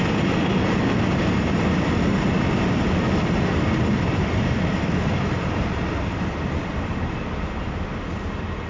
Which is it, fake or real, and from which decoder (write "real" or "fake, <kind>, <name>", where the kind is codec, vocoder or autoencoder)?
real